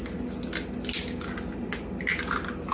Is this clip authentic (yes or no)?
yes